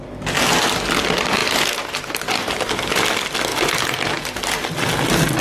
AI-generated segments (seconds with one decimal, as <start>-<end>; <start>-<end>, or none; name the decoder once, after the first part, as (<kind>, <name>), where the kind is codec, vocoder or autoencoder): 1.4-2.3 (vocoder, BigVGAN v2)